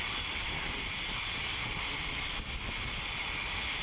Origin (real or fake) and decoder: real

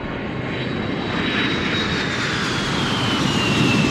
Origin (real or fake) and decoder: real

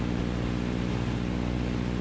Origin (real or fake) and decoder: real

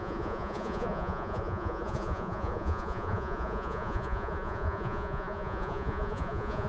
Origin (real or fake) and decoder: fake, vocoder, Vocos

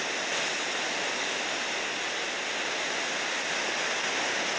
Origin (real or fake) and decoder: real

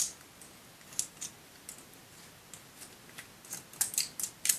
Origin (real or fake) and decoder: real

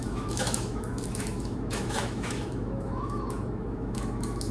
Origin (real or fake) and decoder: fake, autoencoder, DAC-VAE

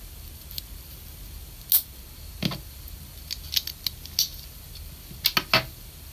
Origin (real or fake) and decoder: real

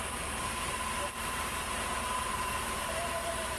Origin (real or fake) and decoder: fake, vocoder, BigVGAN v2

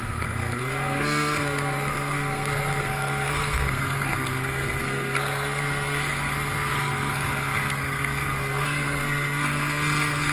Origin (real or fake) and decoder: fake, codec, SNAC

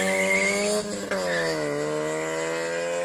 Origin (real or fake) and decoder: real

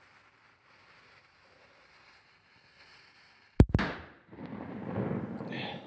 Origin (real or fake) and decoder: real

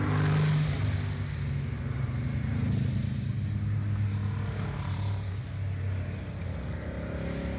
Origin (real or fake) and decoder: real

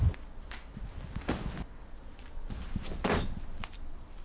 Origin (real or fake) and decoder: real